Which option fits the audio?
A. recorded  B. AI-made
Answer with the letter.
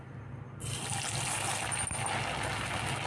A